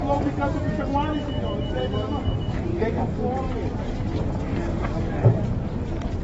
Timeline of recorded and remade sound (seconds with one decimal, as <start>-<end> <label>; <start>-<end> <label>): 0.0-2.7 recorded; 2.7-3.5 remade; 3.5-4.2 recorded; 4.2-5.4 remade; 5.4-6.2 recorded

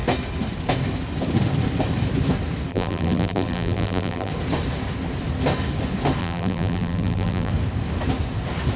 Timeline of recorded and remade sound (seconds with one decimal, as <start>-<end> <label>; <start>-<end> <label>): 0.0-2.7 recorded; 2.7-4.3 remade; 4.3-6.2 recorded; 6.2-7.5 remade; 7.5-8.8 recorded

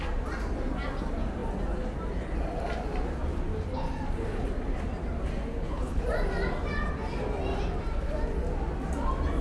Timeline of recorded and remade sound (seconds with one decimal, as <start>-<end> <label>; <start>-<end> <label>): 0.0-5.5 recorded; 5.5-6.0 remade; 6.0-9.4 recorded

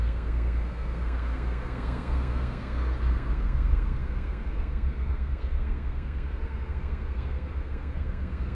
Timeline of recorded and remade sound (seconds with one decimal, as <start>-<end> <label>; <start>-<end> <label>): 0.0-8.5 remade

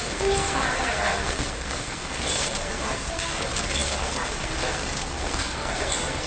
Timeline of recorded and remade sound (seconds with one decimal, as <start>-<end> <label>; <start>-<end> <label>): 0.0-6.3 remade

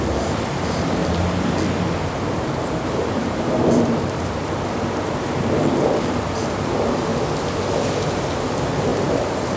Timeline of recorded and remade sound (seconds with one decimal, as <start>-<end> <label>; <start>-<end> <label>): 0.0-1.0 remade; 1.0-2.4 recorded; 2.4-7.1 remade; 7.1-8.0 recorded; 8.0-9.6 remade

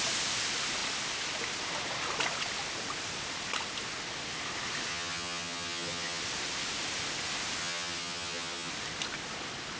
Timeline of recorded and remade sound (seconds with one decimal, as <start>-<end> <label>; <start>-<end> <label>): 0.0-4.9 recorded; 4.9-6.2 remade; 6.2-7.6 recorded; 7.6-8.7 remade; 8.7-9.8 recorded

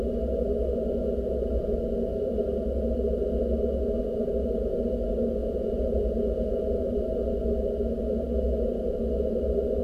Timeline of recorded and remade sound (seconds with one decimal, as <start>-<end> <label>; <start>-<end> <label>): 0.0-5.4 recorded; 5.4-6.8 remade; 6.8-9.8 recorded